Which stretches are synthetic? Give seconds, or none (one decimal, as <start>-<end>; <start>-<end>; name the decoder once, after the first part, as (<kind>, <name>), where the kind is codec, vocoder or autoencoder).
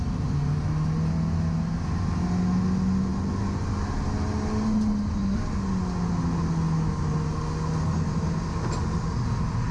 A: none